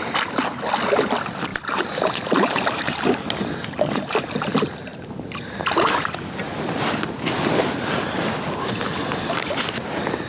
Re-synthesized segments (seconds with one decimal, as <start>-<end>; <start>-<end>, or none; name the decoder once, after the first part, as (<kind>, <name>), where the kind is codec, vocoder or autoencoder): 1.5-2.3 (vocoder, BigVGAN v2); 4.9-7.6